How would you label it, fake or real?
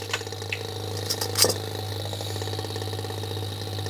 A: real